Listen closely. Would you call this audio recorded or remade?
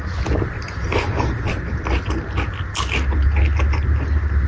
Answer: recorded